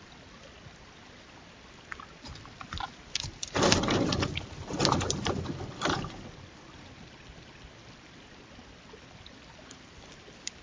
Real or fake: real